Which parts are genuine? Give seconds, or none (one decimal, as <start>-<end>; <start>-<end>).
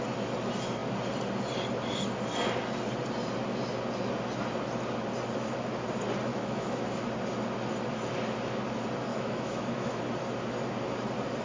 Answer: 0.0-6.3; 7.0-9.1; 10.0-11.4